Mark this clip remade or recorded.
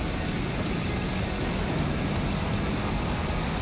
recorded